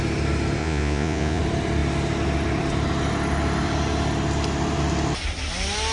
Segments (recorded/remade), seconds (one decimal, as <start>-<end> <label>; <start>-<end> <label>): 0.0-0.6 recorded; 0.6-1.4 remade; 1.4-5.9 recorded